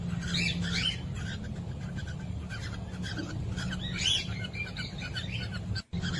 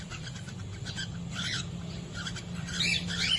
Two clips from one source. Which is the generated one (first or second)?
second